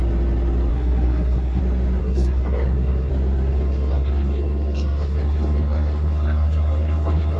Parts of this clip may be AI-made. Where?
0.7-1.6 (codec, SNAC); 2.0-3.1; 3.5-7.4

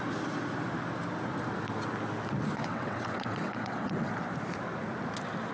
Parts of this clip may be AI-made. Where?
2.6-4.1 (vocoder, WaveNeXt)

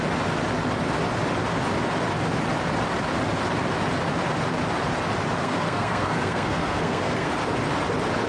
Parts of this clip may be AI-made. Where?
5.4-7.3 (codec, SNAC)

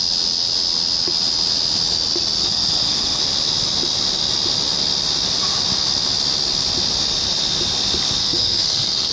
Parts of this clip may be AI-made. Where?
2.4-3.2 (codec, SNAC); 8.2-9.1

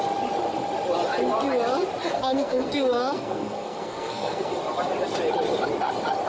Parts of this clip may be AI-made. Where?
2.1-4.5 (codec, SNAC)